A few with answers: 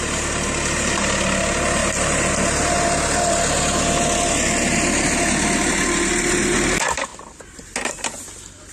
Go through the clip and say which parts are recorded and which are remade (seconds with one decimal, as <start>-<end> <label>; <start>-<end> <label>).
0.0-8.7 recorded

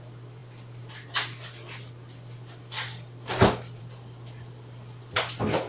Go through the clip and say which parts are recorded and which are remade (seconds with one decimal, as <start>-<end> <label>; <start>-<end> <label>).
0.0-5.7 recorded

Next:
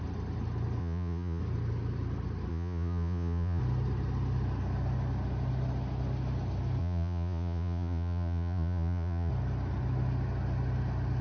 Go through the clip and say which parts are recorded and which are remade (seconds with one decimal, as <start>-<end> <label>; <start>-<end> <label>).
0.0-0.8 recorded; 0.8-1.4 remade; 1.4-2.5 recorded; 2.5-3.6 remade; 3.6-6.8 recorded; 6.8-9.3 remade; 9.3-11.2 recorded

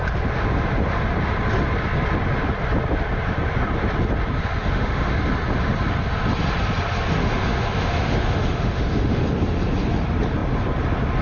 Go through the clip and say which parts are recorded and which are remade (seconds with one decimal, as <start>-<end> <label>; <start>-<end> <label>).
0.0-4.6 recorded; 4.6-5.1 remade; 5.1-7.2 recorded; 7.2-9.2 remade; 9.2-11.2 recorded

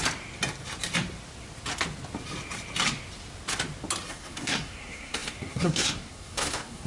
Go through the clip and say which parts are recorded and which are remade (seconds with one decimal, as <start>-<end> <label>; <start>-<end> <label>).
0.0-4.1 recorded; 4.1-6.9 remade